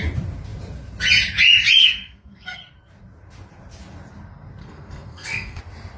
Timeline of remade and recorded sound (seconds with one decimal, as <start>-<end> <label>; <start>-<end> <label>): 0.0-1.8 recorded; 1.8-2.6 remade; 2.6-4.6 recorded; 4.6-5.6 remade; 5.6-6.0 recorded